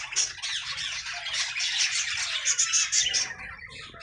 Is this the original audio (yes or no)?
yes